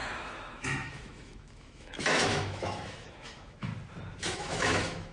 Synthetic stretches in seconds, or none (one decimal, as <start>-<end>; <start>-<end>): 0.0-3.7; 4.2-5.1